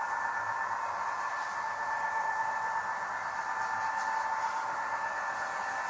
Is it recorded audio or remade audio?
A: recorded